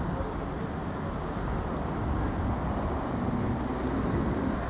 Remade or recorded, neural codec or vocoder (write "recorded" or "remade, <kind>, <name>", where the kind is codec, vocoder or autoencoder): recorded